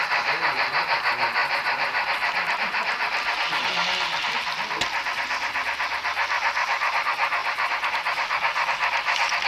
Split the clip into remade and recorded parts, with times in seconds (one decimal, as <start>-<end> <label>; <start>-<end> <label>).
0.0-9.5 recorded